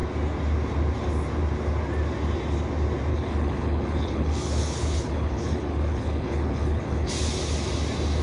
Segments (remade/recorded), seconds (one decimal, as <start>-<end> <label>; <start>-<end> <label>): 0.0-3.1 recorded; 3.1-7.1 remade; 7.1-8.2 recorded